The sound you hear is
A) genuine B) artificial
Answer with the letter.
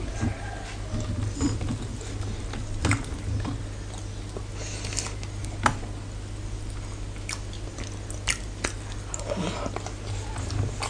A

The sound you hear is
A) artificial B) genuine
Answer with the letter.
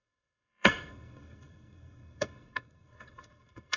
A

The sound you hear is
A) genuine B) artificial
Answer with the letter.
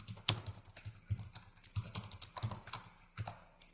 A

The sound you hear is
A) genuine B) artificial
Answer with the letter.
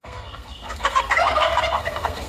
B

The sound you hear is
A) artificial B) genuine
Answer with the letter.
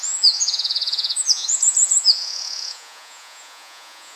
A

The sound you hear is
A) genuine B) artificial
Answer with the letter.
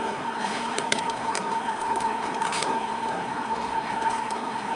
B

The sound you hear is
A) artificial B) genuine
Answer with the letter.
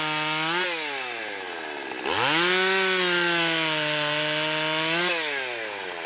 B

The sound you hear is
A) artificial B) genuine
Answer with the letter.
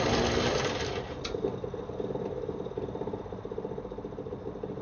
B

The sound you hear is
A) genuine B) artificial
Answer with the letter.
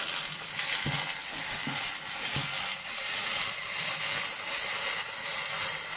A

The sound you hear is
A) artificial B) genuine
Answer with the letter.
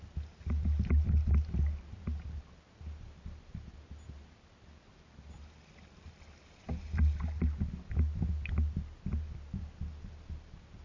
B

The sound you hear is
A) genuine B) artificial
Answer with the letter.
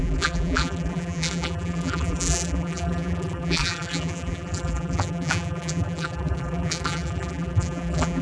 B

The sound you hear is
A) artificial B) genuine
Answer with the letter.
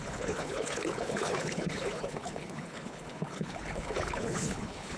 A